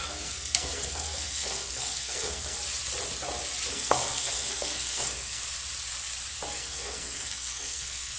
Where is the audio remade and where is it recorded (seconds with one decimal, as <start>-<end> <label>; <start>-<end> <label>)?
0.0-2.6 remade; 2.6-3.7 recorded; 3.7-5.4 remade; 5.4-6.5 recorded; 6.5-8.2 remade